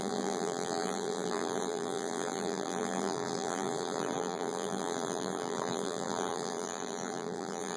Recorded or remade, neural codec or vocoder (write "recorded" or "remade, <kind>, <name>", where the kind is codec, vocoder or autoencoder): remade, vocoder, BigVGAN v2